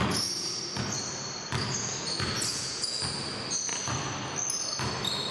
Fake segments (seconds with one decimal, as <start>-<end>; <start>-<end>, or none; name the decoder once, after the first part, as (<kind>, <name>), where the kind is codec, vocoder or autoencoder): 2.5-3.0 (vocoder, Vocos)